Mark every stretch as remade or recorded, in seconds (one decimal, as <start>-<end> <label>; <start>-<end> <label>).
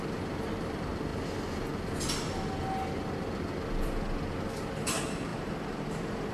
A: 0.0-1.1 remade; 1.1-4.8 recorded; 4.8-6.3 remade